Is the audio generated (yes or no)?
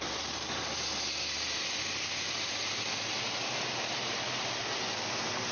no